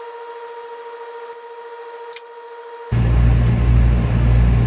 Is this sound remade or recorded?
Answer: recorded